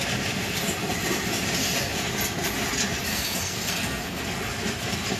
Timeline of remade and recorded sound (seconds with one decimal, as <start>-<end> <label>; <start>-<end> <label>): 0.0-3.1 recorded; 3.1-4.2 remade; 4.2-5.2 recorded